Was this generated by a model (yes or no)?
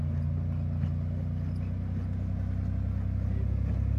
no